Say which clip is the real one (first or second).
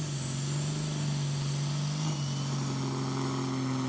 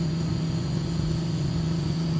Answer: first